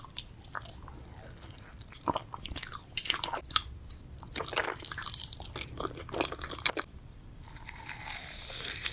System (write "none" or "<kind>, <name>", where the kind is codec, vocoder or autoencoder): vocoder, BigVGAN v2